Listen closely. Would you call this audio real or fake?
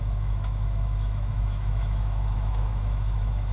fake